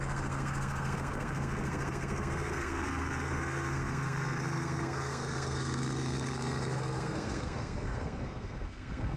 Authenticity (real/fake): fake